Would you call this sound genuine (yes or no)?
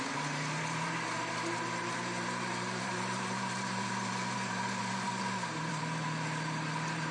no